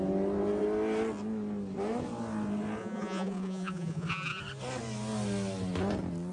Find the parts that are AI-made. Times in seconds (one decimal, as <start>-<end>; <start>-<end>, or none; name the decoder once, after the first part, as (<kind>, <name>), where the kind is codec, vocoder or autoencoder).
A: 2.8-4.4 (vocoder, Vocos)